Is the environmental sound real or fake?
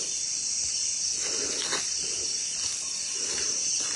real